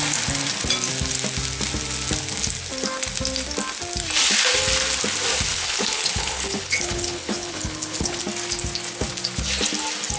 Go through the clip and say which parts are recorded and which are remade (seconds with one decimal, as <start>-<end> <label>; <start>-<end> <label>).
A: 0.0-5.5 recorded; 5.5-8.2 remade; 8.2-10.2 recorded